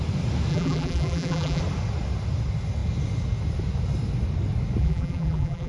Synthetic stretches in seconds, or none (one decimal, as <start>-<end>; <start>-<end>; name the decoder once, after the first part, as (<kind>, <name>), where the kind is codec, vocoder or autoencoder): 0.5-1.6 (vocoder, BigVGAN v2); 4.8-5.7